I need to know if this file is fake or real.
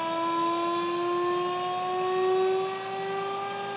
real